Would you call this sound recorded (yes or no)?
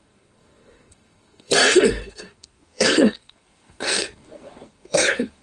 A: no